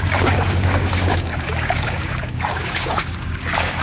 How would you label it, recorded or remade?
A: remade